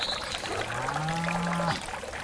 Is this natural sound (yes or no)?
yes